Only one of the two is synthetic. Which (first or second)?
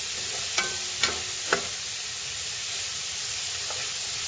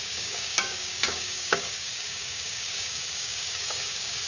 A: second